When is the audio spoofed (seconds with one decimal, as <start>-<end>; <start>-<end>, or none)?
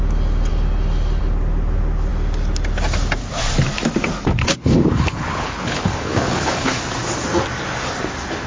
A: 4.5-6.8